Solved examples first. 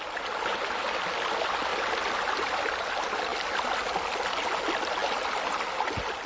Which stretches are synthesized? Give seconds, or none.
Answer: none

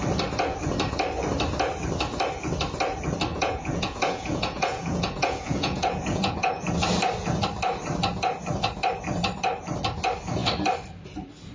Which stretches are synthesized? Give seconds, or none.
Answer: 3.3-6.7 (vocoder, Vocos)

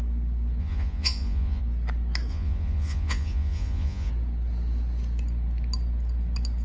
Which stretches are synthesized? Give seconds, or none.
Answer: 0.6-1.6 (vocoder, Vocos); 2.3-4.1

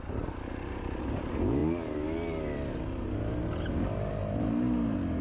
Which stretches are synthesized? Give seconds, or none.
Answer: none